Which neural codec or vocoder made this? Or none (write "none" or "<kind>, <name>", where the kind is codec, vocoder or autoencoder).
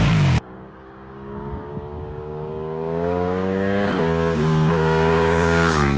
codec, DAC